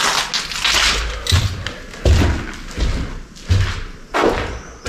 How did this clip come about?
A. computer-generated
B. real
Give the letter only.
B